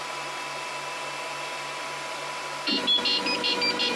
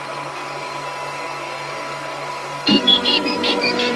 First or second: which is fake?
second